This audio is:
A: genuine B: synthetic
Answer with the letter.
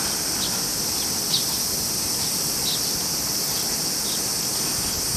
A